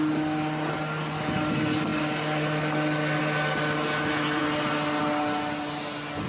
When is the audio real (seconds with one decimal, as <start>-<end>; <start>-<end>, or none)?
0.0-6.3